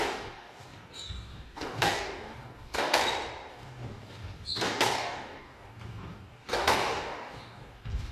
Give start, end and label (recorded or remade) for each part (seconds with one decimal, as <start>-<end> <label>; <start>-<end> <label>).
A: 0.0-3.0 remade; 3.0-3.5 recorded; 3.5-8.1 remade